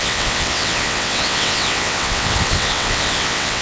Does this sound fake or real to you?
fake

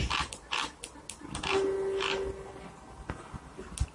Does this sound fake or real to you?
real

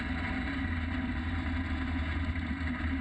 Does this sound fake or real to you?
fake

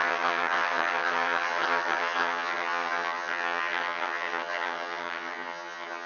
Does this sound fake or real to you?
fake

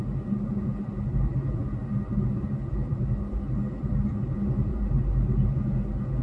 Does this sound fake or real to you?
real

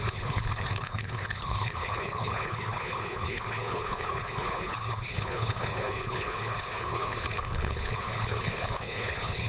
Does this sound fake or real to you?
fake